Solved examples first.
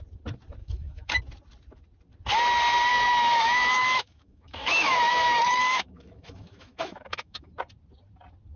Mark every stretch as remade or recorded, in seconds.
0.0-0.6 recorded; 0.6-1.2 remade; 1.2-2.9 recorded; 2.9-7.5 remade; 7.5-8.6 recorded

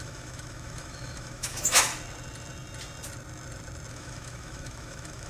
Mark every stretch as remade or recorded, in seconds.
0.0-1.9 remade; 1.9-3.9 recorded; 3.9-5.3 remade

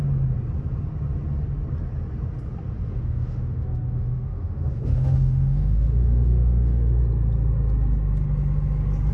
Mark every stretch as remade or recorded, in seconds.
0.0-2.9 recorded; 2.9-7.0 remade; 7.0-9.1 recorded

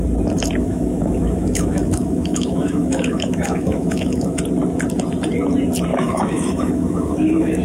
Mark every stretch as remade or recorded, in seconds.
0.0-0.6 recorded; 0.6-4.4 remade; 4.4-5.9 recorded; 5.9-7.6 remade

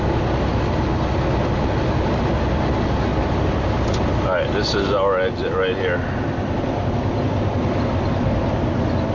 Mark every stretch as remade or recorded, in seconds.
0.0-9.1 recorded

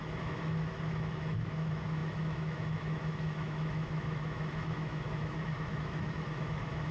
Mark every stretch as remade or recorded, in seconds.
0.0-6.9 remade

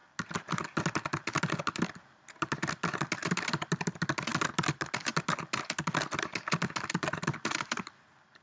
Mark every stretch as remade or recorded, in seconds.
0.0-8.4 recorded